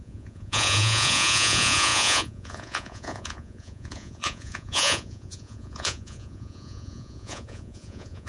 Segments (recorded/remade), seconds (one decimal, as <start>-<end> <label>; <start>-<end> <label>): 0.0-8.3 remade